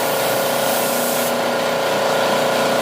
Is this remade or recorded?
recorded